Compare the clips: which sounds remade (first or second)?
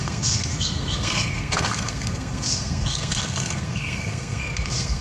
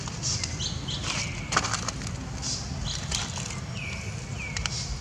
first